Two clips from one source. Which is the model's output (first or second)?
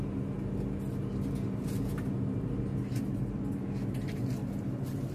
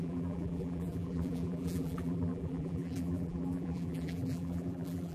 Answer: second